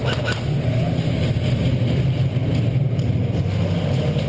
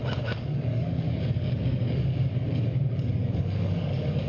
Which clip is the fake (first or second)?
second